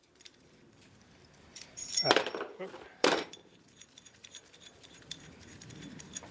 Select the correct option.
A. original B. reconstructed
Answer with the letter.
B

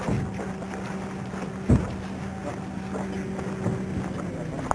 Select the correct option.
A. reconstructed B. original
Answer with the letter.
B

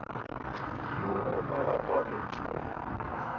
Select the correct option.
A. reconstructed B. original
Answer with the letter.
A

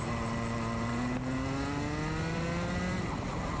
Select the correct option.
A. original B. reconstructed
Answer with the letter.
A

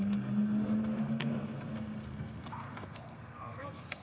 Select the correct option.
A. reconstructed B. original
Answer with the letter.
A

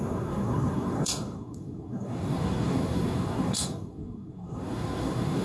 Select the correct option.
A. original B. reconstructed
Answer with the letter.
B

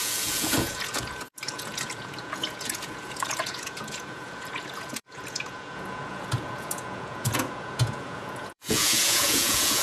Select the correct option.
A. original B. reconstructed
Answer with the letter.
B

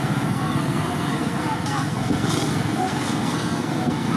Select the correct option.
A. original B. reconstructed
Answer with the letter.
B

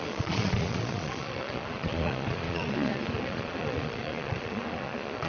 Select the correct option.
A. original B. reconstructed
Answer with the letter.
B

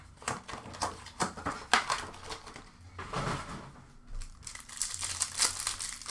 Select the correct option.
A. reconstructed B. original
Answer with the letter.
B